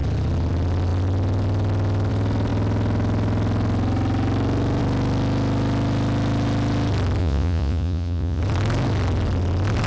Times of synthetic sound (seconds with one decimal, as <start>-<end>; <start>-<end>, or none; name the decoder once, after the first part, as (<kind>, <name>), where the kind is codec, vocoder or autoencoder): 7.2-8.4 (vocoder, Vocos)